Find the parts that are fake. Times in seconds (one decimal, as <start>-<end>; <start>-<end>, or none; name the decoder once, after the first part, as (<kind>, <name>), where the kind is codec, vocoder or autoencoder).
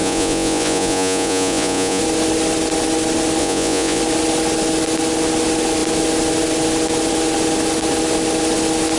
0.0-2.0 (vocoder, Vocos); 3.4-4.0